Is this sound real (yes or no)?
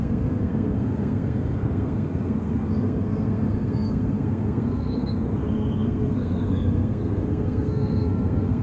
no